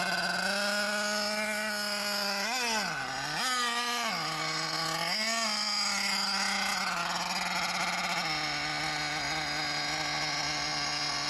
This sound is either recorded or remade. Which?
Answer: recorded